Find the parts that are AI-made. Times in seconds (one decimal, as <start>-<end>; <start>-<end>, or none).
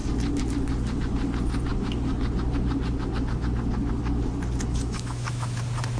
4.7-5.6